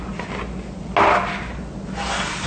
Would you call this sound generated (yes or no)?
no